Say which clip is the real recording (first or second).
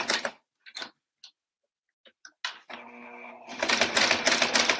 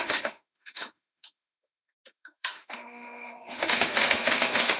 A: first